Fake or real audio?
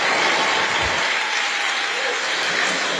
real